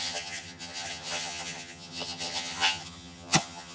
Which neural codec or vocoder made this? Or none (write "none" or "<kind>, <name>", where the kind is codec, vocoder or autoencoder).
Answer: vocoder, HiFi-GAN